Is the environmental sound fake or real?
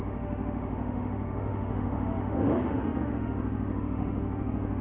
fake